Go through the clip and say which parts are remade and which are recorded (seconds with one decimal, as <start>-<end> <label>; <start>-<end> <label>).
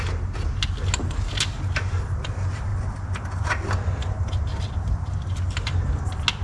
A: 0.0-6.4 recorded